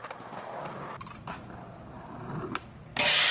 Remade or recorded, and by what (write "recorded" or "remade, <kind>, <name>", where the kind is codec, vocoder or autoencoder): recorded